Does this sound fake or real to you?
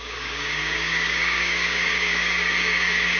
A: fake